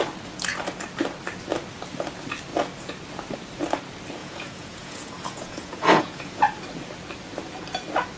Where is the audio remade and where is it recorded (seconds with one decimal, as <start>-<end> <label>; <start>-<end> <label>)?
0.0-4.2 recorded; 4.2-6.4 remade; 6.4-8.2 recorded